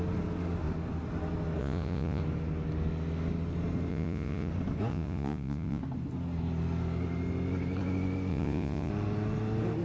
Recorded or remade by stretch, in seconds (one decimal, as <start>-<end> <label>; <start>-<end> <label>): 0.0-1.6 recorded; 1.6-2.2 remade; 2.2-3.9 recorded; 3.9-4.5 remade; 4.5-4.9 recorded; 4.9-5.8 remade; 5.8-8.3 recorded; 8.3-8.9 remade; 8.9-9.8 recorded